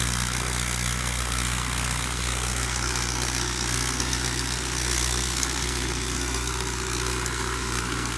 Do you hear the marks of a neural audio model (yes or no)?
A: yes